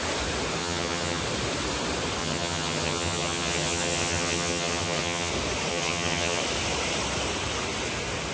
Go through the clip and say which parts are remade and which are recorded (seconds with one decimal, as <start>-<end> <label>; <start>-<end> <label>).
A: 0.0-0.6 recorded; 0.6-1.2 remade; 1.2-2.2 recorded; 2.2-5.3 remade; 5.3-5.7 recorded; 5.7-6.4 remade; 6.4-8.3 recorded